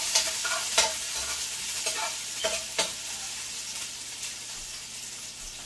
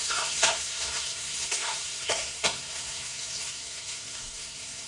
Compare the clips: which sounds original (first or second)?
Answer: first